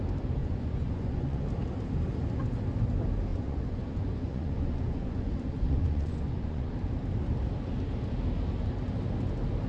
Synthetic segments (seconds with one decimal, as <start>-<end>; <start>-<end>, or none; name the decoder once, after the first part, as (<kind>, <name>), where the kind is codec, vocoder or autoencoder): 0.4-1.4 (vocoder, Vocos); 3.3-6.7